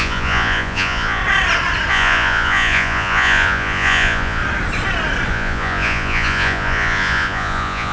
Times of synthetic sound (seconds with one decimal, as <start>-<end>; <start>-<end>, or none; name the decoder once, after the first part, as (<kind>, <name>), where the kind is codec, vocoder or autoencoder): 0.0-1.2 (vocoder, Vocos); 1.9-4.4; 5.3-7.9